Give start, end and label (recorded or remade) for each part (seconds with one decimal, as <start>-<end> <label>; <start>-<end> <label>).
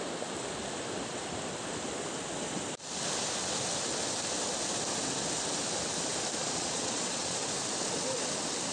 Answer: 0.0-6.4 recorded; 6.4-7.5 remade; 7.5-8.7 recorded